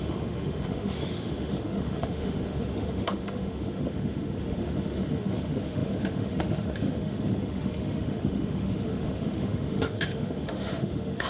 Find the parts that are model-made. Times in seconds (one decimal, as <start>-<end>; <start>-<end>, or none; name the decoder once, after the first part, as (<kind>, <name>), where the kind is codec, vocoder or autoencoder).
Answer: 0.0-11.3 (autoencoder, DAC-VAE)